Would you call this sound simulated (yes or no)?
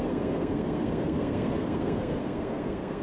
yes